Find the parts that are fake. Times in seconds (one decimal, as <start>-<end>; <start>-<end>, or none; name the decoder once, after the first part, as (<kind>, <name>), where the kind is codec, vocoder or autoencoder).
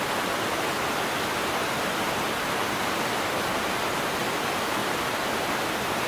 4.8-5.6 (vocoder, BigVGAN v2)